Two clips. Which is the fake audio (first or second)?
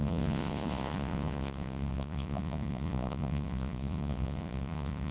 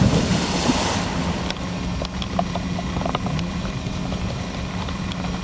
first